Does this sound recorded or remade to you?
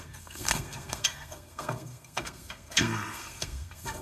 remade